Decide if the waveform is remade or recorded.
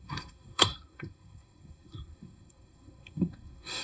remade